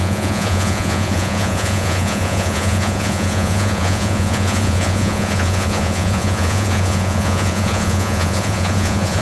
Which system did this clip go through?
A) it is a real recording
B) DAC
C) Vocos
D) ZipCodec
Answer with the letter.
C